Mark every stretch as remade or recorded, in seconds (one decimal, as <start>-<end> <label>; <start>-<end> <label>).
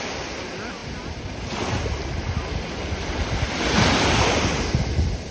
0.0-5.3 recorded